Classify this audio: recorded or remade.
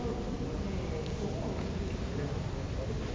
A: recorded